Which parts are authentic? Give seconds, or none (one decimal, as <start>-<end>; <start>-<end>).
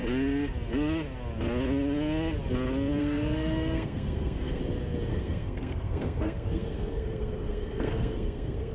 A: 0.0-3.0; 4.6-5.1